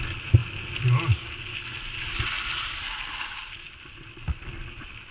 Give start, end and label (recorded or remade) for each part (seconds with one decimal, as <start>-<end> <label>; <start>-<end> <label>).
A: 0.0-5.1 recorded